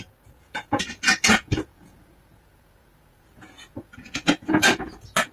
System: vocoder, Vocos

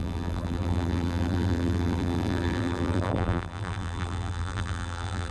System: vocoder, BigVGAN v2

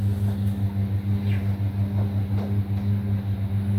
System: none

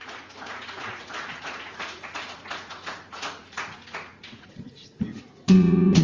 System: vocoder, Vocos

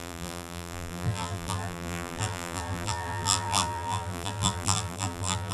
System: vocoder, BigVGAN v2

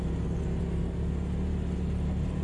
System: none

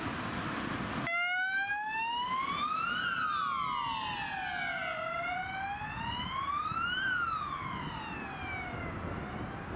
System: none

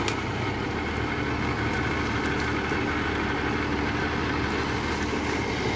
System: none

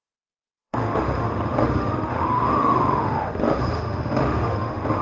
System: autoencoder, DAC-VAE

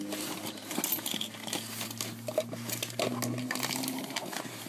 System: none